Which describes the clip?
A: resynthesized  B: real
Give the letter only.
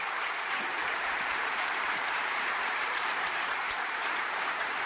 A